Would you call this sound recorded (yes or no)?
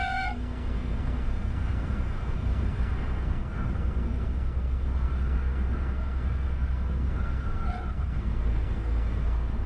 no